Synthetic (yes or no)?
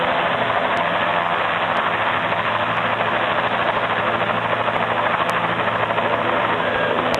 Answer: no